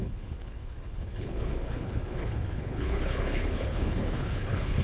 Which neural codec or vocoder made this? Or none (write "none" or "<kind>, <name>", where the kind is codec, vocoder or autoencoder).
codec, HILCodec